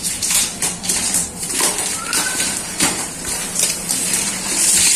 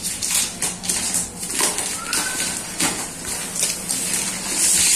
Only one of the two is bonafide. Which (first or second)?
second